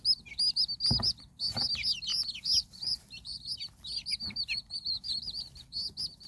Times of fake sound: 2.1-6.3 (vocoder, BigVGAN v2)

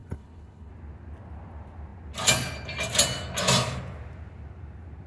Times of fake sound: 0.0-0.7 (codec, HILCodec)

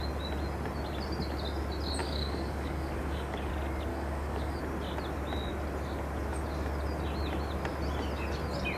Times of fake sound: 2.0-3.5 (codec, DAC); 3.9-4.6

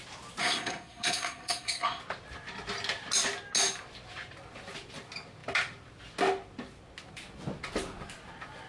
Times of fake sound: 0.4-2.0 (codec, SNAC)

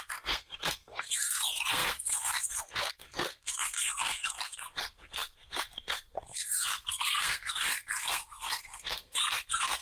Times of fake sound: 0.0-9.8 (codec, SNAC)

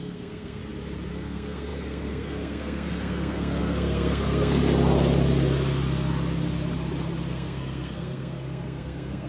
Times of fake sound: 0.0-0.6 (codec, SNAC); 1.1-4.6; 7.3-9.3

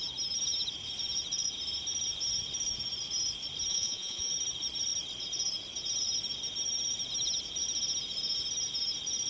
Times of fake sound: 3.7-4.3 (vocoder, Vocos)

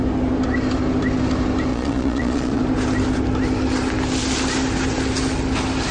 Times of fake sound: 1.7-2.6 (vocoder, Vocos)